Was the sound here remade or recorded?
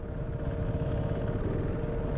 recorded